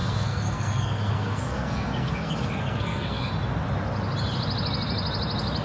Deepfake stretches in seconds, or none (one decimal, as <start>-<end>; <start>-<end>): 0.0-3.3